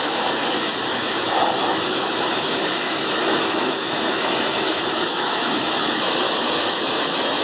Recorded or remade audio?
remade